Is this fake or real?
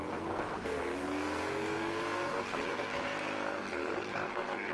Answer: fake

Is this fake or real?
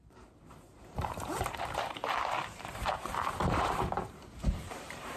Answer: fake